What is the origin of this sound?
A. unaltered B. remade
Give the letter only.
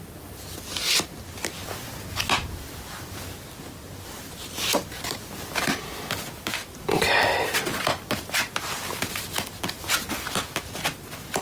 A